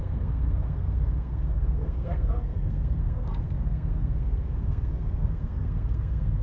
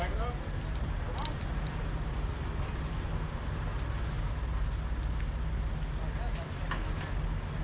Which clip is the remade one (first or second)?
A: first